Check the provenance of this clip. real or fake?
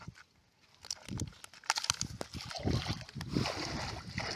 real